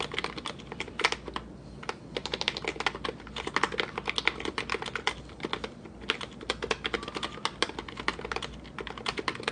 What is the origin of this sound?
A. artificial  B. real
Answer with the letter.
B